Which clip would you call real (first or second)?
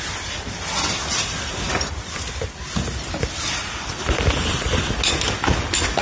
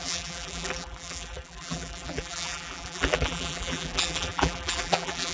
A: first